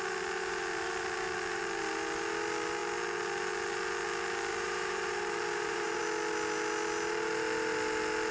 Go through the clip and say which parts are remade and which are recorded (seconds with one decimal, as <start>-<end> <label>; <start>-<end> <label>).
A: 0.0-4.5 recorded; 4.5-6.0 remade; 6.0-8.3 recorded